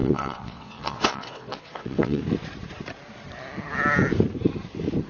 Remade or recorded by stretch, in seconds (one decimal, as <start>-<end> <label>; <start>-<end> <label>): 0.0-2.2 remade; 2.2-5.1 recorded

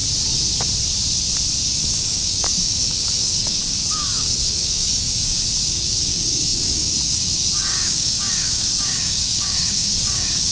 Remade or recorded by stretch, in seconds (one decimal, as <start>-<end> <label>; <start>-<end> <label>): 0.0-1.6 recorded; 1.6-10.5 remade

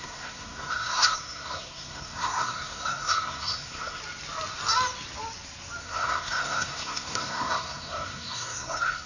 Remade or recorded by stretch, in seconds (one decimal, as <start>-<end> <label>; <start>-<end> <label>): 0.0-4.0 remade; 4.0-5.8 recorded; 5.8-9.1 remade

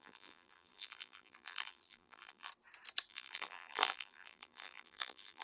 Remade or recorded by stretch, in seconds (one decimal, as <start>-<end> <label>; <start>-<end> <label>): 0.0-2.5 remade; 2.5-3.1 recorded; 3.1-5.4 remade

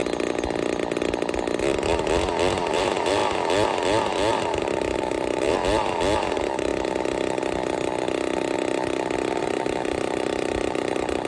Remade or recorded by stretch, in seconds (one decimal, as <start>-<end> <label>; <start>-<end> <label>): 0.0-2.7 recorded; 2.7-3.2 remade; 3.2-4.4 recorded; 4.4-5.6 remade; 5.6-6.3 recorded; 6.3-6.7 remade; 6.7-9.4 recorded; 9.4-11.3 remade

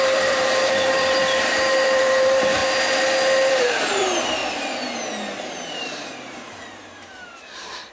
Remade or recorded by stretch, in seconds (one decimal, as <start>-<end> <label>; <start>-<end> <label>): 0.0-2.6 remade; 2.6-3.5 recorded; 3.5-4.4 remade; 4.4-5.5 recorded; 5.5-7.9 remade

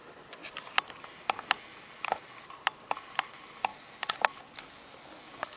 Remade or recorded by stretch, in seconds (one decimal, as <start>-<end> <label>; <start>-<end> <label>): 0.0-5.6 recorded